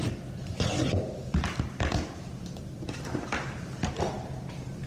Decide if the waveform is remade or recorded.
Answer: recorded